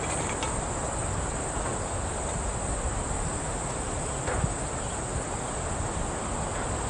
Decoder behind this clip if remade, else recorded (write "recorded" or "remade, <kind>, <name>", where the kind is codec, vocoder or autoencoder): recorded